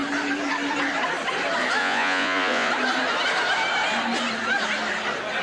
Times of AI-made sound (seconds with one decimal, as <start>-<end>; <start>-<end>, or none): 1.8-2.7